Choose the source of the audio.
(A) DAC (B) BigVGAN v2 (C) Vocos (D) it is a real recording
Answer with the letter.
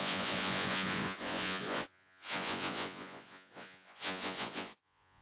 C